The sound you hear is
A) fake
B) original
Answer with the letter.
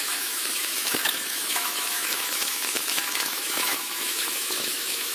A